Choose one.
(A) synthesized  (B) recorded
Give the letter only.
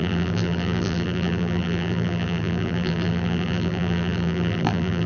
A